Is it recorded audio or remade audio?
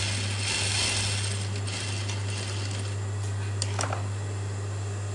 recorded